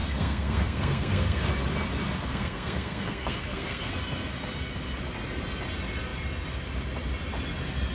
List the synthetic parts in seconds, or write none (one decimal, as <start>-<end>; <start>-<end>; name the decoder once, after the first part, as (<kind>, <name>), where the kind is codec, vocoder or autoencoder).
0.0-1.5 (codec, SNAC); 2.3-3.9